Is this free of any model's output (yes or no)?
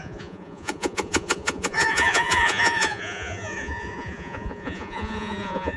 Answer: no